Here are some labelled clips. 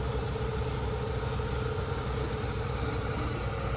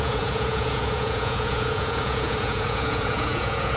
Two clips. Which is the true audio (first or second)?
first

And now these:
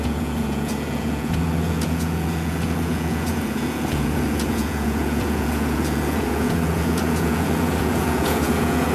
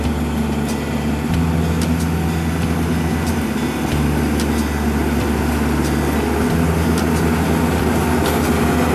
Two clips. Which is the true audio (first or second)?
second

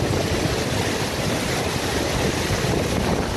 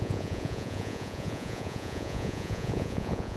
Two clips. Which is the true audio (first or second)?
first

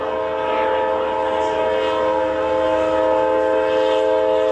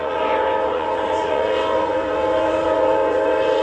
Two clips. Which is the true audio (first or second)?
first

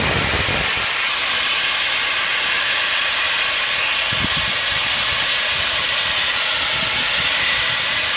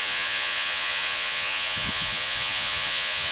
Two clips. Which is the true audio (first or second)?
first